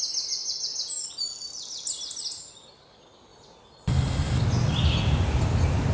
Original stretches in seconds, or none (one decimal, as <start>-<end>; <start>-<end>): 0.0-5.9